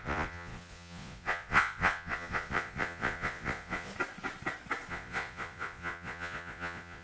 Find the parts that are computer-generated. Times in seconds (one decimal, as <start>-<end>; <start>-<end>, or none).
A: 0.0-3.9; 4.9-7.0